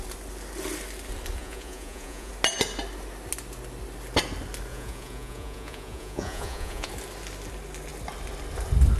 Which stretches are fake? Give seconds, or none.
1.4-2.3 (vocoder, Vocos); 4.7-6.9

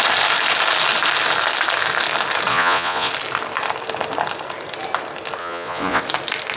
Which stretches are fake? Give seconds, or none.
2.5-3.1 (vocoder, Vocos); 5.4-6.0

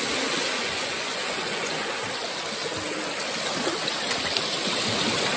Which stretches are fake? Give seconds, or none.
0.4-1.9 (vocoder, Vocos)